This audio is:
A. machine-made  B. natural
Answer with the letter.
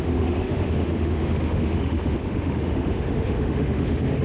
A